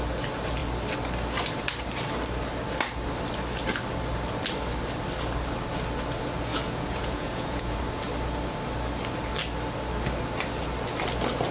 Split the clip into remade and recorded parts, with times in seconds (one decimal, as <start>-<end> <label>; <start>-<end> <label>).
0.0-6.5 recorded; 6.5-7.8 remade; 7.8-11.5 recorded